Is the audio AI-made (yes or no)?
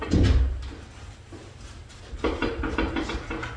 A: no